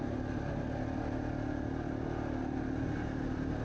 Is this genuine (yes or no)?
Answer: yes